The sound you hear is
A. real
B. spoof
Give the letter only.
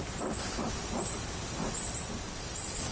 A